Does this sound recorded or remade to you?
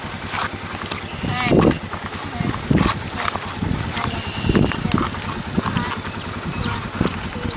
recorded